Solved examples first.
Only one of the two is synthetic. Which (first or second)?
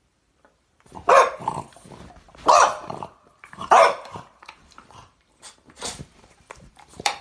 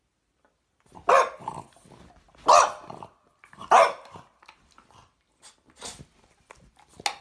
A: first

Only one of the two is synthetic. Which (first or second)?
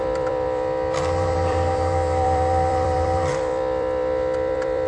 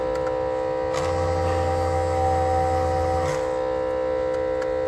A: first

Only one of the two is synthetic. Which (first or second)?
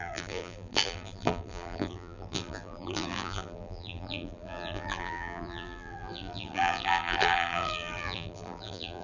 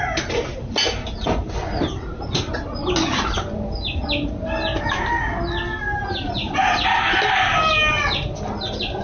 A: first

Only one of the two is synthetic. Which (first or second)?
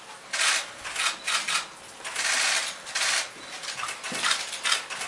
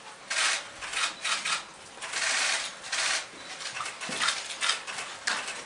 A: second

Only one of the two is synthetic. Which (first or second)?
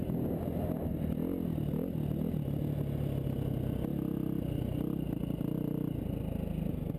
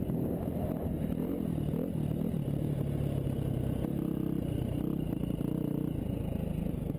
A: second